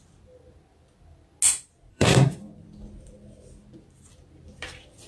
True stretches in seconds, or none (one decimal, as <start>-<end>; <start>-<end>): 0.0-1.9; 2.4-5.1